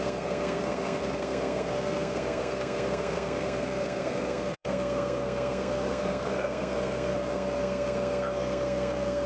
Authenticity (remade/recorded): remade